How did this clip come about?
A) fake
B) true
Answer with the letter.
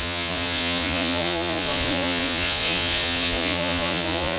A